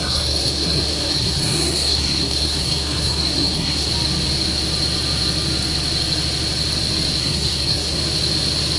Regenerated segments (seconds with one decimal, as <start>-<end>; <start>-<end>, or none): 0.0-3.9; 7.2-8.0